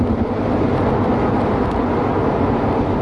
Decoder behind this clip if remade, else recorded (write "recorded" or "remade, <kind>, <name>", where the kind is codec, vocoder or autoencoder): recorded